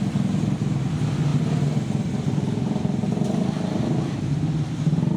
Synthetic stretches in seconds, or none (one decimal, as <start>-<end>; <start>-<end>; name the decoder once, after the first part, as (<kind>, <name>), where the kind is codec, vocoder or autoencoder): 1.3-4.4 (vocoder, BigVGAN v2)